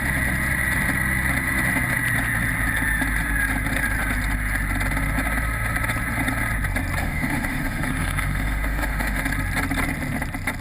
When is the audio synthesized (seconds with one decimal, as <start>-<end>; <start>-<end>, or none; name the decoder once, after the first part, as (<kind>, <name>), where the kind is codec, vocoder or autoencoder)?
7.0-9.2 (autoencoder, DAC-VAE)